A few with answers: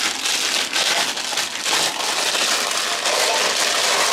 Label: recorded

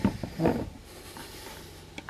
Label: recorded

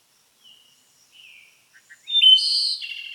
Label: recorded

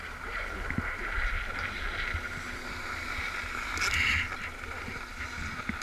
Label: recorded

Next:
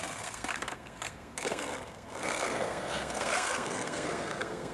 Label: remade